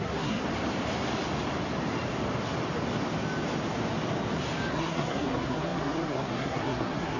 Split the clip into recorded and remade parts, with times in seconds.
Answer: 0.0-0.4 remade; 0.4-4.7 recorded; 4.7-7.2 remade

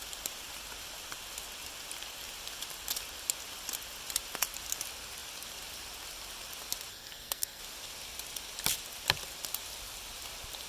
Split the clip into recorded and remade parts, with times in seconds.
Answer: 0.0-6.9 recorded; 6.9-7.6 remade; 7.6-10.7 recorded

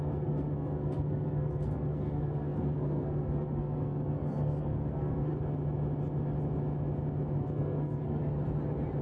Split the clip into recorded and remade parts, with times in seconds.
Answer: 0.0-5.3 remade; 5.3-7.4 recorded; 7.4-8.2 remade; 8.2-9.0 recorded

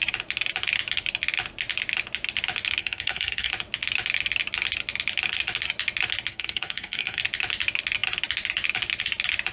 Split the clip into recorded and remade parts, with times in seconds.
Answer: 0.0-2.8 recorded; 2.8-3.5 remade; 3.5-6.3 recorded; 6.3-7.2 remade; 7.2-9.5 recorded